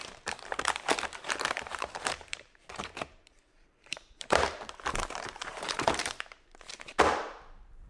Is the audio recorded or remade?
remade